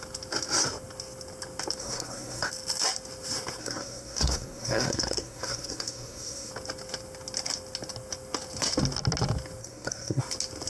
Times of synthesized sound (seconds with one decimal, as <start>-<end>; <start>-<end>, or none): 1.8-2.5; 3.6-6.5; 9.6-10.2